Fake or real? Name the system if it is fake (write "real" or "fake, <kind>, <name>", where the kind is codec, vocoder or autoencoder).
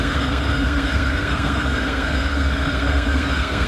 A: fake, codec, SNAC